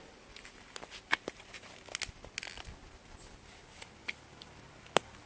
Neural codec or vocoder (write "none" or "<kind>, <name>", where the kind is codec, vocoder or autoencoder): none